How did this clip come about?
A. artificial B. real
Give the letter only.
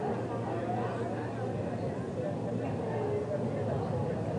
B